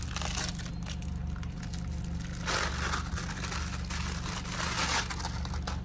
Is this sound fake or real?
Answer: real